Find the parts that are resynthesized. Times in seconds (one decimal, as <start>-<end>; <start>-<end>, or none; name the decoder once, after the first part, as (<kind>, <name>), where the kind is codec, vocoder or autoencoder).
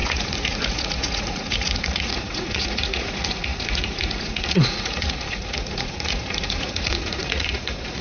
0.0-8.0 (vocoder, Vocos)